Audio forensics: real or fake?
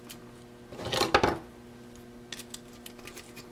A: real